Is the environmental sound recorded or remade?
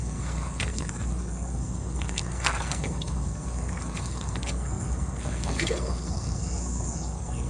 remade